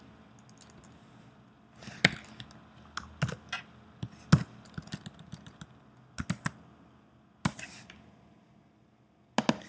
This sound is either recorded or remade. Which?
recorded